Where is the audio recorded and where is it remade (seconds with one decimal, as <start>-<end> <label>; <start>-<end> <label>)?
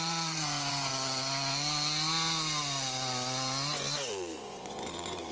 0.0-0.9 remade; 0.9-4.1 recorded; 4.1-5.3 remade